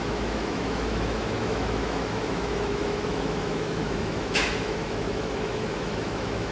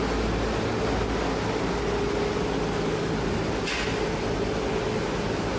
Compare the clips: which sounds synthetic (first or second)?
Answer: first